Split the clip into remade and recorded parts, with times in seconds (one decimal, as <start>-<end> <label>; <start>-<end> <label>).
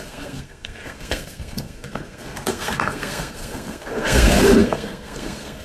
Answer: 0.0-5.6 remade